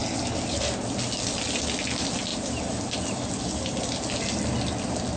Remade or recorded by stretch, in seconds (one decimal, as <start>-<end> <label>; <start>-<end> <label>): 0.0-5.2 recorded